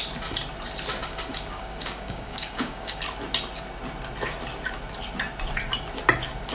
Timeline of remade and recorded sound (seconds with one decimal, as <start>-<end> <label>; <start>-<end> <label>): 0.0-1.0 recorded; 1.0-3.0 remade; 3.0-6.5 recorded